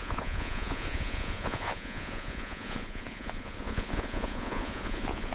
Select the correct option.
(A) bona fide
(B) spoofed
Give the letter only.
B